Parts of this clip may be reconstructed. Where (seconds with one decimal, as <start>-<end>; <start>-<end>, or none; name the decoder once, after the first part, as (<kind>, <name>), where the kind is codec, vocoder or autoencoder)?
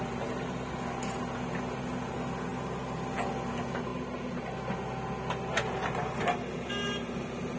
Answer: none